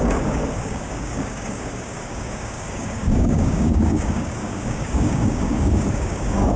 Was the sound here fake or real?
fake